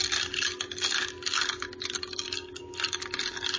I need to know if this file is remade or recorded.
recorded